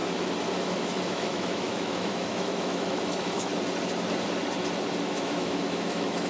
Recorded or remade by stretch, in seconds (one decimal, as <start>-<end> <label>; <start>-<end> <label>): 0.0-0.6 recorded; 0.6-3.5 remade; 3.5-5.0 recorded; 5.0-6.3 remade